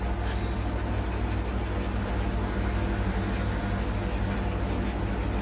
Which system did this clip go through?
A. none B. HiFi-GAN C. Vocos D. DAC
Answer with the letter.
A